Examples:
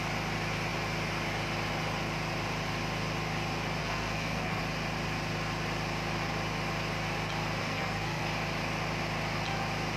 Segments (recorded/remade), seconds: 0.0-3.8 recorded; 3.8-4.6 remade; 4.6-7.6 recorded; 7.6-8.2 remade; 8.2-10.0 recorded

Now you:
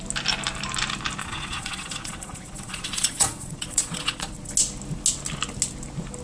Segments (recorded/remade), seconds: 0.0-1.2 recorded; 1.2-4.5 remade; 4.5-6.2 recorded

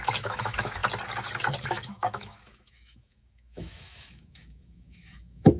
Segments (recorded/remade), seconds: 0.0-0.8 remade; 0.8-1.6 recorded; 1.6-5.6 remade

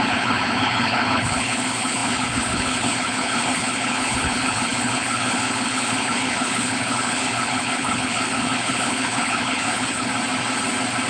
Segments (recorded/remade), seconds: 0.0-10.1 remade; 10.1-11.1 recorded

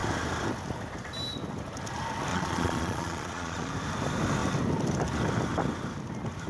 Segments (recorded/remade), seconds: 0.0-2.3 recorded; 2.3-3.7 remade; 3.7-6.5 recorded

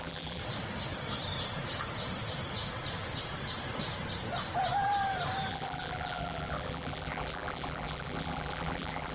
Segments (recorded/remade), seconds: 0.0-0.4 remade; 0.4-5.5 recorded; 5.5-9.1 remade

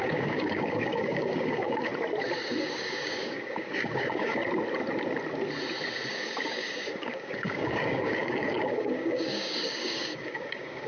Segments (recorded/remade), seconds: 0.0-1.9 remade; 1.9-2.6 recorded; 2.6-4.4 remade; 4.4-6.1 recorded; 6.1-10.9 remade

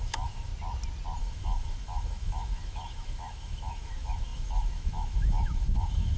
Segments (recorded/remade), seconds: 0.0-0.5 remade; 0.5-1.2 recorded; 1.2-6.2 remade